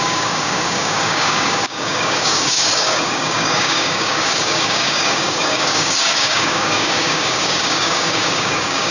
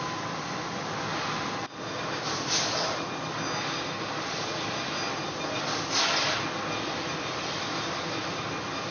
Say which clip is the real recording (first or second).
second